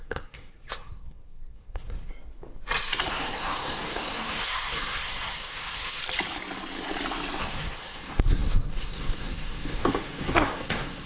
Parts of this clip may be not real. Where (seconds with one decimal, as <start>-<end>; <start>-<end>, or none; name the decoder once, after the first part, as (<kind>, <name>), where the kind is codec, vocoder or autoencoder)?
0.0-2.1 (codec, SNAC); 3.1-6.0; 7.4-11.1